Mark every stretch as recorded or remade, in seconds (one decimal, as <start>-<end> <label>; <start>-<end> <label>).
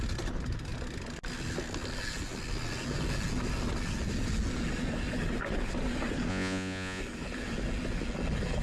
0.0-6.3 recorded; 6.3-7.0 remade; 7.0-8.6 recorded